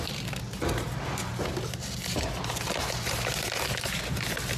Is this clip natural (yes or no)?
yes